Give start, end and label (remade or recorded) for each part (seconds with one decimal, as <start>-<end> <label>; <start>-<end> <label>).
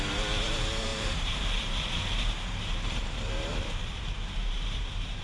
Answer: 0.0-5.2 remade